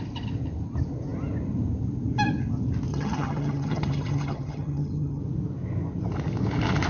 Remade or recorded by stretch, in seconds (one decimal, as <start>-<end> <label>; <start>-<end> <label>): 0.0-2.9 recorded; 2.9-5.2 remade; 5.2-6.9 recorded